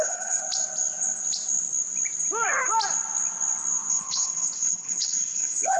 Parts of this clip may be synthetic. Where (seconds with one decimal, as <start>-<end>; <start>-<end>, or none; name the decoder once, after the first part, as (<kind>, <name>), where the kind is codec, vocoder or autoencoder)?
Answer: 0.0-0.4 (codec, HILCodec); 3.9-5.8